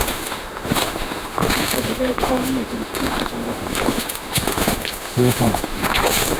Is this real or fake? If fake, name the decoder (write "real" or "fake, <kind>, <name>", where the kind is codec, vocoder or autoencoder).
fake, autoencoder, DAC-VAE